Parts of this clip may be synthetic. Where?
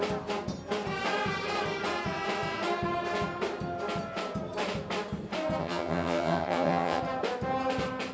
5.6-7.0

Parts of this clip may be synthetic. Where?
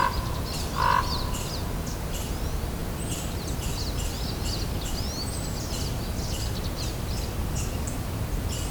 none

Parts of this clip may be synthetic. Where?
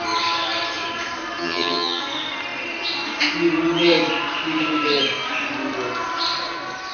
1.4-2.0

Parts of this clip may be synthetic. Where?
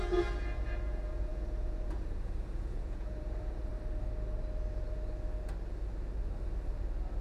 0.0-3.7